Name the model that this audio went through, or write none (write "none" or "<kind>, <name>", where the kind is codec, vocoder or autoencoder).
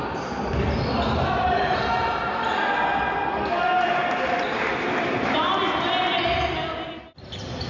none